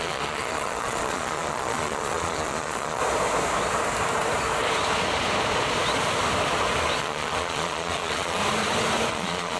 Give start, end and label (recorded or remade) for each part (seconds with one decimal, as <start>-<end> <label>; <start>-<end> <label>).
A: 0.0-3.0 remade; 3.0-7.0 recorded; 7.0-8.4 remade; 8.4-9.1 recorded; 9.1-9.6 remade